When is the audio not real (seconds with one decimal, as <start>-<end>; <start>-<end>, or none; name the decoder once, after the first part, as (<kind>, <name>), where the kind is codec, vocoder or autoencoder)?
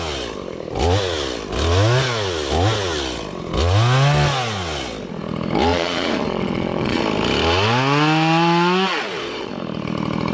5.7-7.0 (vocoder, Vocos); 8.9-9.5